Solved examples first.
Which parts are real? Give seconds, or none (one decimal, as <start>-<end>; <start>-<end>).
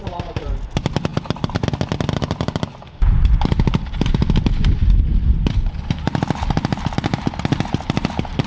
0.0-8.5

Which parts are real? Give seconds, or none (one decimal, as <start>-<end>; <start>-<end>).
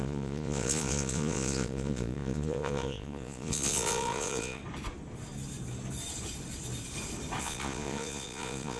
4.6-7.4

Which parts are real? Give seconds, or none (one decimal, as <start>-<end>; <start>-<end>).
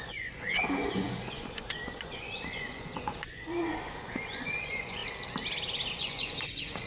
5.0-5.9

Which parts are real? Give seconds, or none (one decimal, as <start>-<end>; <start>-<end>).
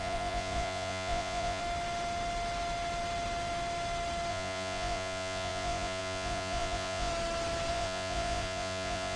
1.6-4.3; 7.1-7.7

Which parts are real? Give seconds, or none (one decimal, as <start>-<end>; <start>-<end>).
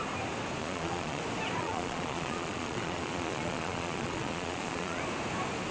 0.0-0.6; 1.2-1.6; 5.0-5.7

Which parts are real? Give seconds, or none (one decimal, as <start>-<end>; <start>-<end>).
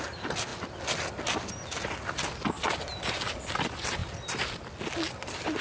0.0-5.6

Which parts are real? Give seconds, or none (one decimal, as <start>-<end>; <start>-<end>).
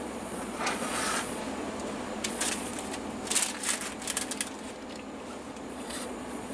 1.4-2.3; 2.7-5.7